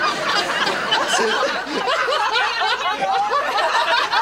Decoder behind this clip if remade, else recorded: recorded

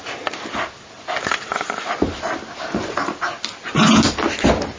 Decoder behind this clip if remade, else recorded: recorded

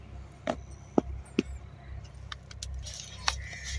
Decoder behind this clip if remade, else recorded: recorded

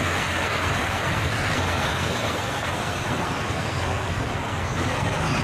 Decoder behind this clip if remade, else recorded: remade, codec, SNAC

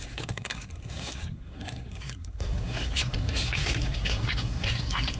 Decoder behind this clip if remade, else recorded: remade, codec, SNAC